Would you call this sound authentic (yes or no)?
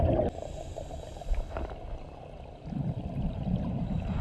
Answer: yes